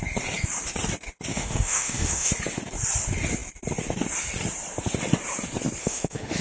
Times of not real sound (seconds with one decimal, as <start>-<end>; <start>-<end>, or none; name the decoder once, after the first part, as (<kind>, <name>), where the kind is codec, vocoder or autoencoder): 1.3-2.3 (autoencoder, DAC-VAE); 5.8-6.4